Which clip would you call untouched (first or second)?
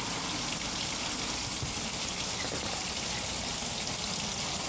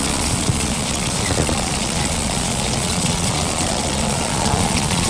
first